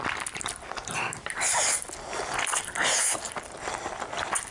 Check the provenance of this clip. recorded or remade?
recorded